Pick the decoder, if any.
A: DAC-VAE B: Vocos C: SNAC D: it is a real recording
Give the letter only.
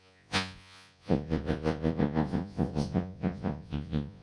B